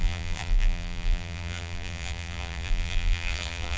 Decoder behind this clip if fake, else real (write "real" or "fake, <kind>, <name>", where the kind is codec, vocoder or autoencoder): fake, vocoder, BigVGAN v2